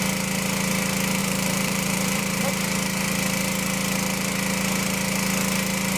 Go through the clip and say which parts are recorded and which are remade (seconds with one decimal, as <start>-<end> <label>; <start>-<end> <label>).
0.0-1.2 recorded; 1.2-2.5 remade; 2.5-6.0 recorded

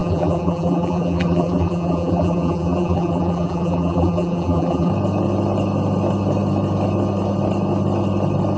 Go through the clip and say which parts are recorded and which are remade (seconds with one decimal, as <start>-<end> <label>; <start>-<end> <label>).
0.0-4.9 remade; 4.9-8.6 recorded

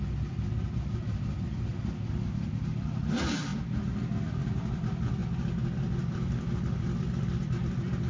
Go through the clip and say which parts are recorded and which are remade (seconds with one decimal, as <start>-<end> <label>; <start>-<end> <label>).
0.0-1.7 remade; 1.7-2.7 recorded; 2.7-3.5 remade; 3.5-4.2 recorded; 4.2-5.2 remade; 5.2-6.0 recorded; 6.0-8.1 remade

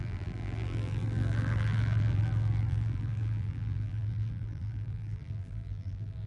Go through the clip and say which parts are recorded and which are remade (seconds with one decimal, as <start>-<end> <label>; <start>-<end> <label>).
0.0-6.3 remade

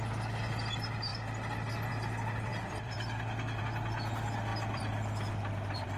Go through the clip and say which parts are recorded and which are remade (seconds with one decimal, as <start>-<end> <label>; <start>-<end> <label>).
0.0-2.5 recorded; 2.5-3.6 remade; 3.6-4.5 recorded; 4.5-6.0 remade

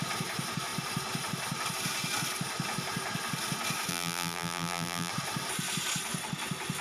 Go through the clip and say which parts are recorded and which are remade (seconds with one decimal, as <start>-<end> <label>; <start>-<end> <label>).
0.0-3.9 recorded; 3.9-5.1 remade; 5.1-6.8 recorded

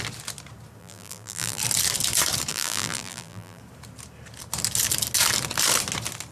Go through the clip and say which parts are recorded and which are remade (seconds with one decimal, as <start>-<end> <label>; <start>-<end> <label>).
0.0-0.8 recorded; 0.8-1.6 remade; 1.6-2.5 recorded; 2.5-3.6 remade; 3.6-6.3 recorded

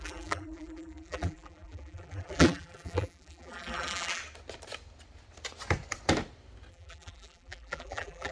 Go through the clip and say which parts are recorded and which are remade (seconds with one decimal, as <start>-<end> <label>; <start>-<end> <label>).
0.0-4.2 remade; 4.2-6.7 recorded; 6.7-8.3 remade